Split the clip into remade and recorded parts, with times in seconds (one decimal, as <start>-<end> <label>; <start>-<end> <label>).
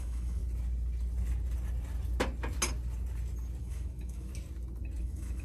0.0-0.4 remade; 0.4-3.6 recorded; 3.6-4.3 remade; 4.3-5.0 recorded; 5.0-5.4 remade